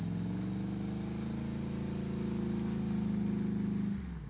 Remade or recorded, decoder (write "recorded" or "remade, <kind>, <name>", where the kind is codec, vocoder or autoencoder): recorded